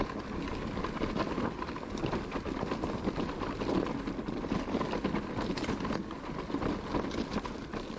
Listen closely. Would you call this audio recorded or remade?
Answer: recorded